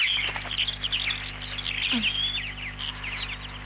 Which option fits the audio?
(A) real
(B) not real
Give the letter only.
A